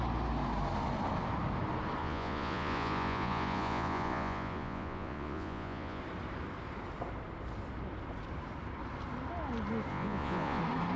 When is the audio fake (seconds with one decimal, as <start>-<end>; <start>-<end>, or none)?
2.0-6.0; 9.9-10.6